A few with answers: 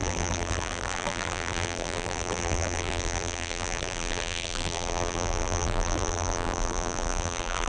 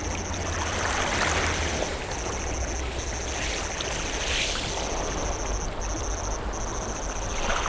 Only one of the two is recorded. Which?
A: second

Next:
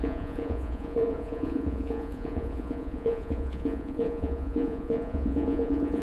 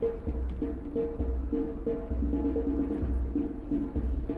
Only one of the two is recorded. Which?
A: second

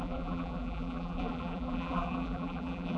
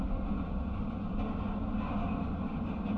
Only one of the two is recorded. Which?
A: second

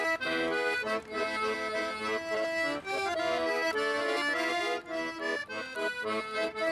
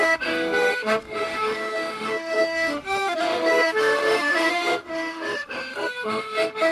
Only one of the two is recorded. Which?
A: first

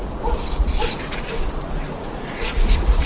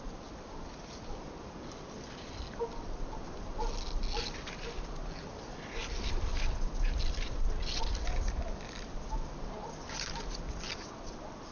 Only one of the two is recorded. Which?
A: second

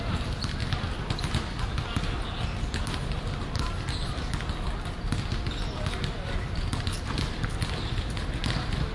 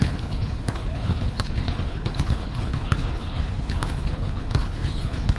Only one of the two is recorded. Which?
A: first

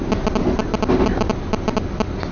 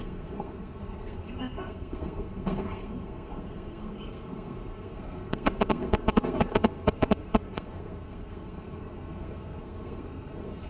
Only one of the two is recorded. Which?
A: first